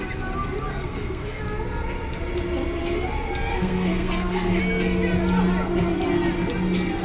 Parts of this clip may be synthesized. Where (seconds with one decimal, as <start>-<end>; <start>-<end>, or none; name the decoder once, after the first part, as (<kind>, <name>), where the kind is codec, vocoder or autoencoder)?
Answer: 0.7-1.4 (codec, SNAC); 3.5-4.6